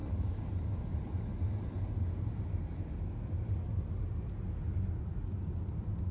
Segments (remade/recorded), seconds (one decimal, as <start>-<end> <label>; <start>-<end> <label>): 0.0-6.1 recorded